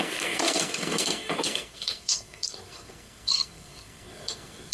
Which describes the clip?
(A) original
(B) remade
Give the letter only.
B